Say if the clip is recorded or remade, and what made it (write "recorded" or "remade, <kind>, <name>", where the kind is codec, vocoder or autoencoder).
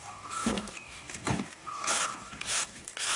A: remade, codec, DAC